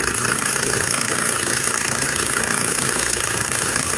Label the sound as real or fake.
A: fake